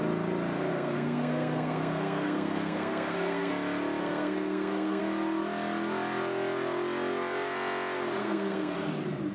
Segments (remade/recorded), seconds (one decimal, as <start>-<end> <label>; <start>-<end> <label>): 0.0-0.7 recorded; 0.7-3.5 remade; 3.5-4.0 recorded; 4.0-5.0 remade; 5.0-8.2 recorded; 8.2-8.9 remade; 8.9-9.3 recorded